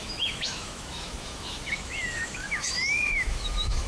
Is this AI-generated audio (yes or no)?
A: yes